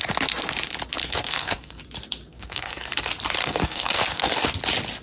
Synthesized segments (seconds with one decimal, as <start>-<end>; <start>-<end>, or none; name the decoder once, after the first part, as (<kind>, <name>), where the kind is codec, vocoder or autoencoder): 1.0-1.8 (codec, SNAC); 2.3-2.9; 3.4-4.4